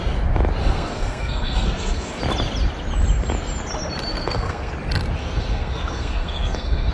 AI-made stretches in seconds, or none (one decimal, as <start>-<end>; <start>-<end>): 0.6-2.2; 4.1-4.7; 5.2-6.9

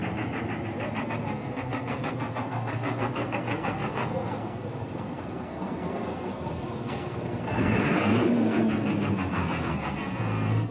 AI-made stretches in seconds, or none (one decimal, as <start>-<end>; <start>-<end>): 1.0-10.7